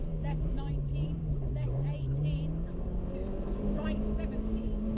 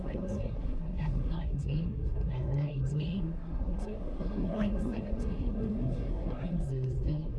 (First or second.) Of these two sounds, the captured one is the first